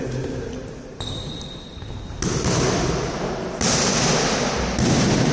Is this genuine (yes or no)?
yes